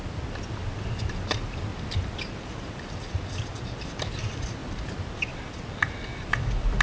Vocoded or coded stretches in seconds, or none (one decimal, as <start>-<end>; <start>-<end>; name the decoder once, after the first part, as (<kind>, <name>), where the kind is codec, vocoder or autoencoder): 0.0-1.7 (vocoder, BigVGAN v2); 2.6-4.6; 5.3-6.8